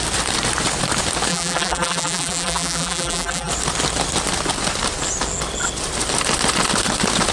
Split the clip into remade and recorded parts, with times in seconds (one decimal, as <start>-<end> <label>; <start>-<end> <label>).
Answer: 0.0-1.3 recorded; 1.3-3.5 remade; 3.5-7.3 recorded